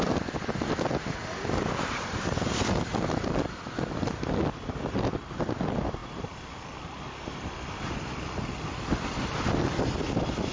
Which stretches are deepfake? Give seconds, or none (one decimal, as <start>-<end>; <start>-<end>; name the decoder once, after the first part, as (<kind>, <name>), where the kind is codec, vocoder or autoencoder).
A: none